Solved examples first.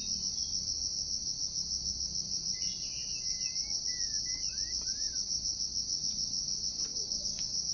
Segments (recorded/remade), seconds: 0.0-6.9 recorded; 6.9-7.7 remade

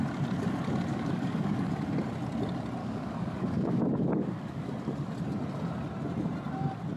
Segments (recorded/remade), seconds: 0.0-0.9 recorded; 0.9-1.7 remade; 1.7-2.8 recorded; 2.8-4.7 remade; 4.7-7.0 recorded